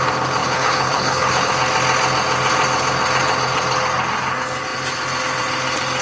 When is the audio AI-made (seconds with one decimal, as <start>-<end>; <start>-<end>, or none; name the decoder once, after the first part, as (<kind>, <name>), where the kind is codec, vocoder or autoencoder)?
0.4-1.5 (codec, HILCodec)